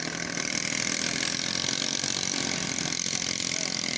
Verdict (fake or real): real